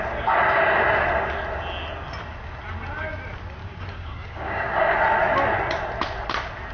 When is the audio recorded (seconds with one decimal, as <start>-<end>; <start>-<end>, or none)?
0.0-3.6; 5.0-6.7

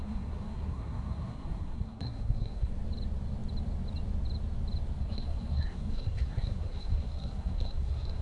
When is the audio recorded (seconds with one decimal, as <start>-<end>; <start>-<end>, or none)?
2.7-5.0

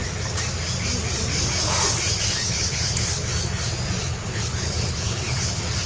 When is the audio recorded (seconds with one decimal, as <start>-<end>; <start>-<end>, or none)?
0.0-2.2; 3.3-4.0

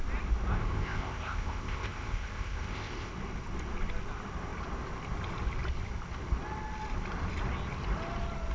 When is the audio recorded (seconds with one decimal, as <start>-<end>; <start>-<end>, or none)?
0.0-0.5; 3.1-8.5

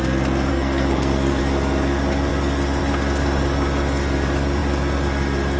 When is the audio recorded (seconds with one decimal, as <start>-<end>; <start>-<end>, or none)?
0.0-0.5; 1.4-5.6

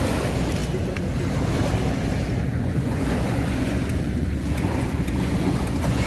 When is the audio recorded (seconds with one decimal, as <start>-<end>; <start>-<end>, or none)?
0.0-2.5